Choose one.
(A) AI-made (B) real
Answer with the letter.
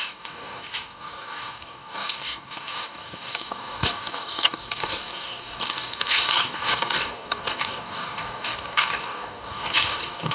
A